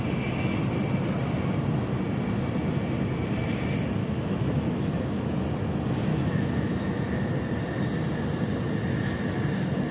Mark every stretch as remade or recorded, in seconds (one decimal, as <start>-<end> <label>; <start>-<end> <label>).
0.0-4.0 recorded; 4.0-5.4 remade; 5.4-6.1 recorded; 6.1-7.3 remade; 7.3-9.9 recorded

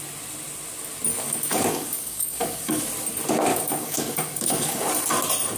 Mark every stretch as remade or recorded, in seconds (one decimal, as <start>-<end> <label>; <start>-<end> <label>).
0.0-1.1 recorded; 1.1-2.8 remade; 2.8-3.5 recorded; 3.5-4.9 remade; 4.9-5.6 recorded